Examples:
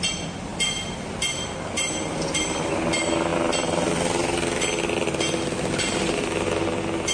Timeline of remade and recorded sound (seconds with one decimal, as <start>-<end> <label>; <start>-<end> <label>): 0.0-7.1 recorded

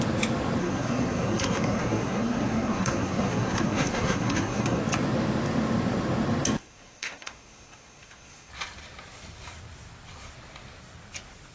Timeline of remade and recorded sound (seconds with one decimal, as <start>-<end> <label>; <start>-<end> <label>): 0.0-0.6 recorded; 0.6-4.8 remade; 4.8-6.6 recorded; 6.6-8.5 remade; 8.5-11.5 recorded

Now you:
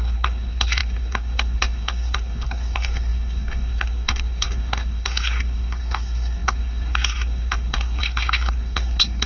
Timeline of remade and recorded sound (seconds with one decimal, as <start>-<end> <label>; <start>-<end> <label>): 0.0-9.3 remade